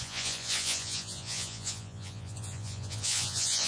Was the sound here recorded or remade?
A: remade